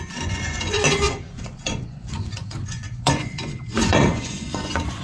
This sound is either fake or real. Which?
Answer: fake